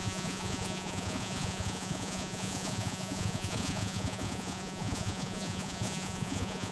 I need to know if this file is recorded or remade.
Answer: remade